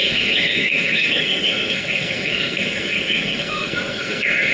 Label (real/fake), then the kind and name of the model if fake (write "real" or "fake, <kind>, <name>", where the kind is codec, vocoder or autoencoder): fake, codec, SNAC